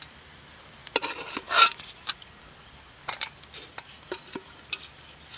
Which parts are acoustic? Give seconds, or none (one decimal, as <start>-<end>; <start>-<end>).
0.0-5.4